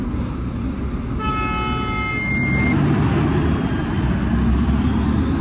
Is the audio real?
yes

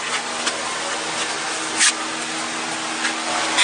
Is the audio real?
yes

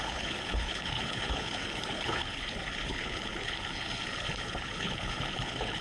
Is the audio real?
no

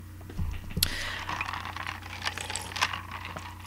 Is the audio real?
yes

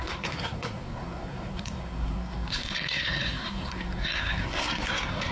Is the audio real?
no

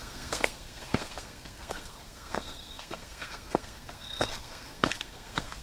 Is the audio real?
no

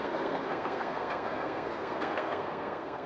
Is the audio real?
no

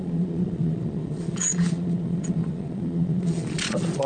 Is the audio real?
no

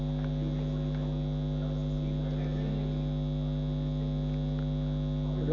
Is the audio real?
yes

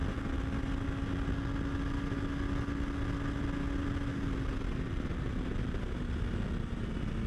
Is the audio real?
yes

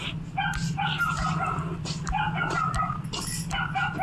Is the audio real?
yes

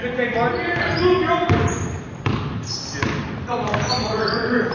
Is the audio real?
yes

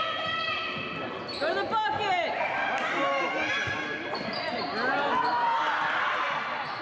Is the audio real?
yes